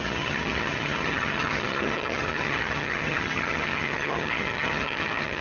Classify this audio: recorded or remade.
remade